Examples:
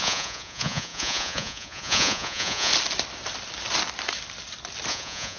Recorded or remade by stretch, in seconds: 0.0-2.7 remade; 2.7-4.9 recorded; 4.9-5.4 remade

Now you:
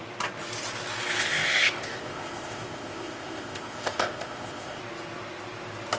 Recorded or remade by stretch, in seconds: 0.0-1.2 recorded; 1.2-4.8 remade; 4.8-6.0 recorded

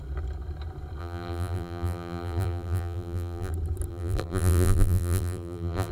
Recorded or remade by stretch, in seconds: 0.0-1.0 recorded; 1.0-3.5 remade; 3.5-3.9 recorded; 3.9-5.9 remade

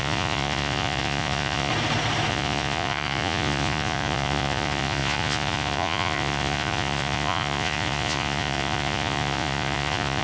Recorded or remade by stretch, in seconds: 0.0-1.7 remade; 1.7-2.3 recorded; 2.3-10.2 remade